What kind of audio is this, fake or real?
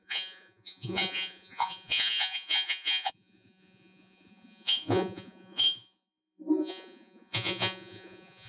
fake